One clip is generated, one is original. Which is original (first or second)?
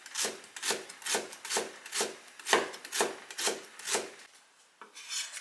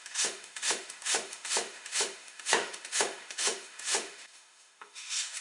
first